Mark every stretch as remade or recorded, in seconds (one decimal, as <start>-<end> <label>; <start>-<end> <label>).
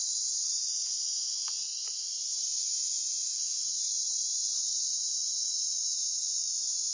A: 0.0-0.7 remade; 0.7-1.7 recorded; 1.7-5.8 remade; 5.8-6.9 recorded